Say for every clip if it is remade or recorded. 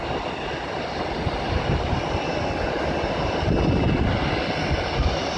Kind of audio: recorded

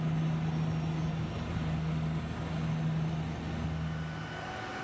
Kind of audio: recorded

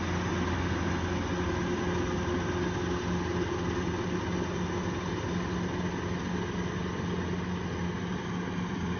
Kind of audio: recorded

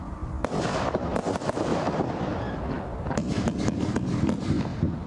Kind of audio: recorded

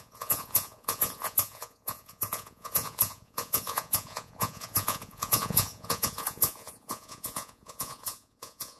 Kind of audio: remade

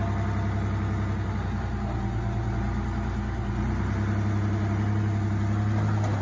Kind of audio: recorded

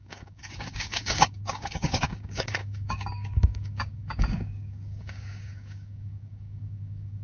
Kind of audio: remade